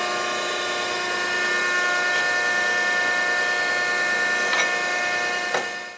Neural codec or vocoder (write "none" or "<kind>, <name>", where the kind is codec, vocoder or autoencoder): none